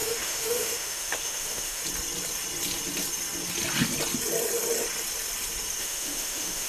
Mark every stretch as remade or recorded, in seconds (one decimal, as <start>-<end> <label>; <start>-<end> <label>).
0.0-1.8 remade; 1.8-5.8 recorded; 5.8-6.7 remade